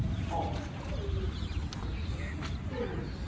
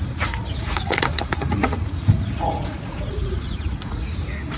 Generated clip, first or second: second